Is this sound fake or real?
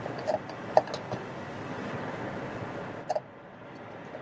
real